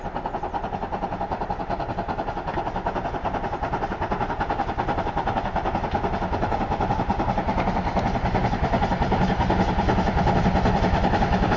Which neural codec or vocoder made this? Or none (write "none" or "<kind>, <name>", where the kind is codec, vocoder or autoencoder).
none